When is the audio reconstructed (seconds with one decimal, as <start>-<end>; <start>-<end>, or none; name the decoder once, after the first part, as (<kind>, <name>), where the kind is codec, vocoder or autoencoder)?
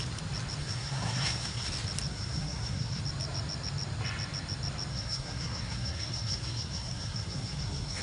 0.6-1.7 (codec, SNAC); 2.1-3.0; 4.9-8.0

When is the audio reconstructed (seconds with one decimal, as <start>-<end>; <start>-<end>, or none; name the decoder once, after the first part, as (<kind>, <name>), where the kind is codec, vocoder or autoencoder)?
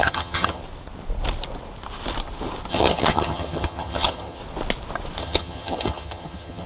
0.0-0.6 (vocoder, HiFi-GAN); 2.7-4.4; 5.2-6.7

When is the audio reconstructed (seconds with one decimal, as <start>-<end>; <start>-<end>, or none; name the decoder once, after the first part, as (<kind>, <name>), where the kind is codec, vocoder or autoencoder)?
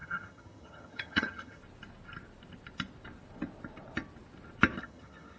0.0-1.6 (vocoder, HiFi-GAN); 4.8-5.4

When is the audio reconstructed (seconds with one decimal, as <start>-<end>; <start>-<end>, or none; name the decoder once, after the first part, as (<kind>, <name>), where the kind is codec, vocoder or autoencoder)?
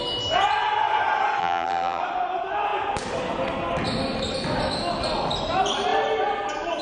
1.4-2.0 (vocoder, BigVGAN v2)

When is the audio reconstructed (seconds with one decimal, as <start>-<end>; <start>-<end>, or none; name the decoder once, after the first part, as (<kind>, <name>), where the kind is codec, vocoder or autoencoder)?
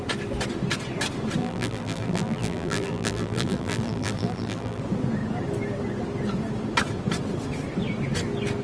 1.4-4.8 (vocoder, BigVGAN v2)